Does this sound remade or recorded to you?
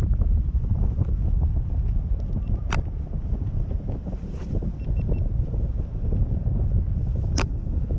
recorded